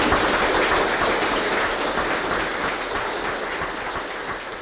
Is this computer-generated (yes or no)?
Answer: no